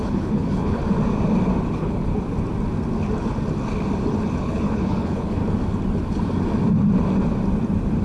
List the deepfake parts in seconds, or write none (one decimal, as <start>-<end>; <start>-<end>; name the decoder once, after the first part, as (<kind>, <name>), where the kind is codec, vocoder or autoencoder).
0.0-0.8 (codec, HILCodec); 1.7-2.1; 4.4-5.4